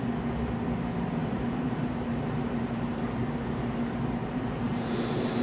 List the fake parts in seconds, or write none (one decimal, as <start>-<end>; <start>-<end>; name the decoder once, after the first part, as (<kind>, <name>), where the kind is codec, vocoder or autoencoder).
1.2-3.2 (vocoder, BigVGAN v2); 4.2-5.4